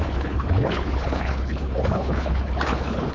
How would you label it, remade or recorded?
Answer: remade